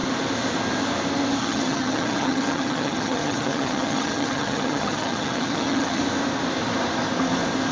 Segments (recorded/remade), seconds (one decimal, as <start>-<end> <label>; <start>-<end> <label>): 0.0-1.4 recorded; 1.4-6.0 remade; 6.0-7.7 recorded